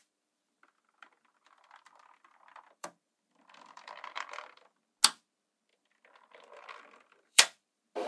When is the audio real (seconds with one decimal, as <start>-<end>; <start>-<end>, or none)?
4.8-5.7